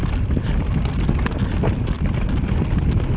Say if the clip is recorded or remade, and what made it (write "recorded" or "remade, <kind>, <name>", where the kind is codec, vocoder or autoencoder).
recorded